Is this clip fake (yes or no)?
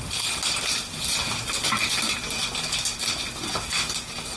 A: yes